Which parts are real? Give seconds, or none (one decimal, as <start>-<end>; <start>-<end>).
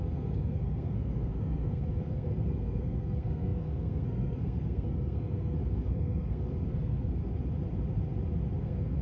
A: 7.2-8.6